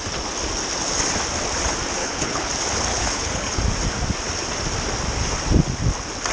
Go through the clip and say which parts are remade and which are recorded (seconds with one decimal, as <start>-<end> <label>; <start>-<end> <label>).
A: 0.0-2.0 recorded; 2.0-2.5 remade; 2.5-2.9 recorded; 2.9-3.6 remade; 3.6-6.3 recorded